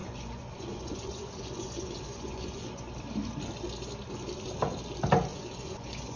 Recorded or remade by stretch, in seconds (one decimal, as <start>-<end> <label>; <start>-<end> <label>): 0.0-2.9 remade; 2.9-5.3 recorded; 5.3-6.2 remade